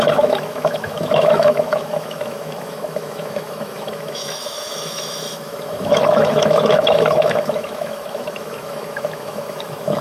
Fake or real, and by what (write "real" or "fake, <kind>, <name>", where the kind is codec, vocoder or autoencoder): fake, autoencoder, DAC-VAE